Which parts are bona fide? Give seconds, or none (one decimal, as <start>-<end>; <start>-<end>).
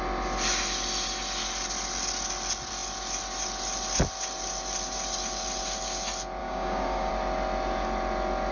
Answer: 0.0-6.4; 7.1-8.5